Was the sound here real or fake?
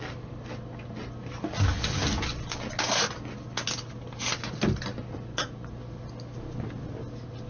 real